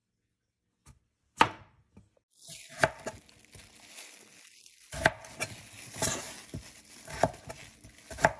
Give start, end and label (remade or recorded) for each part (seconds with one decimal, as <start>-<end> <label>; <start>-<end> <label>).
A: 0.0-8.4 recorded